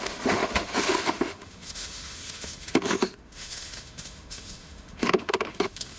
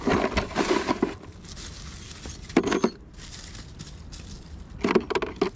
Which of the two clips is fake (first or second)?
first